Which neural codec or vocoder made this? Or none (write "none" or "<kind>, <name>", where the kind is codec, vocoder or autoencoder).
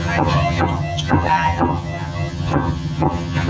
vocoder, HiFi-GAN